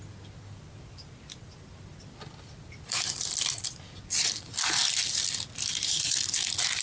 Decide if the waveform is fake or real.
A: real